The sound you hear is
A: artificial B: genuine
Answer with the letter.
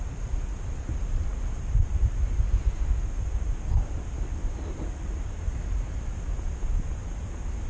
B